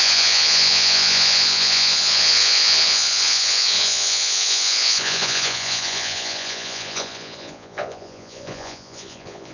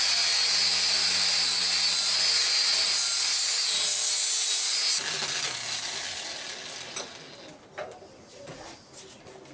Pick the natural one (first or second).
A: second